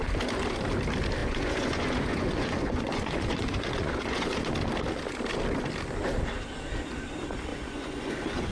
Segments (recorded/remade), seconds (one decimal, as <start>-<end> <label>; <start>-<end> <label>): 0.0-1.2 recorded; 1.2-4.5 remade; 4.5-7.5 recorded; 7.5-8.5 remade